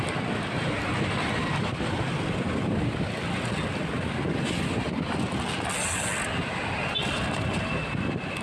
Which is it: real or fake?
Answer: real